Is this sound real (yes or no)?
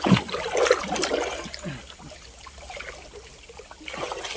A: yes